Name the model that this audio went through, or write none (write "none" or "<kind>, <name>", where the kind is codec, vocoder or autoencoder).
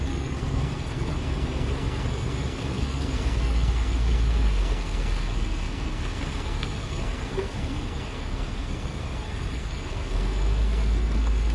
codec, SNAC